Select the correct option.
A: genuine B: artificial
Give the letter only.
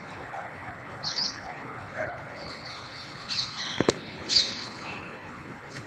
B